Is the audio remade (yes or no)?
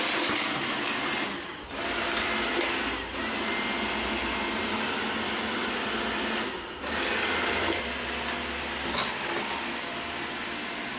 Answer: no